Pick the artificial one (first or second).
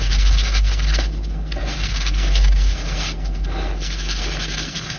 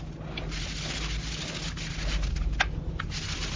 first